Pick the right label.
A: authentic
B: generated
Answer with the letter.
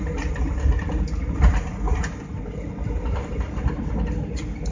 A